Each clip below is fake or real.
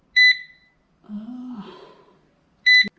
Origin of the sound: real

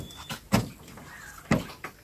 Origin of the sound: real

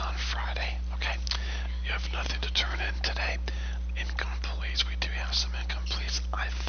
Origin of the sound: real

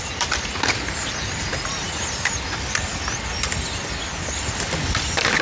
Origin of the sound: real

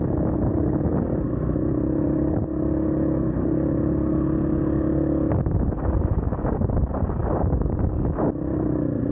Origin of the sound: real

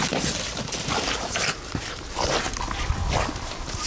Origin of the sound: real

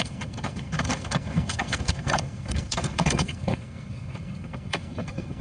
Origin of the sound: fake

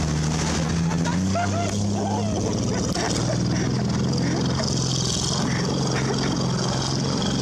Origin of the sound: real